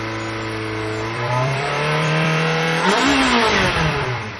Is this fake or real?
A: fake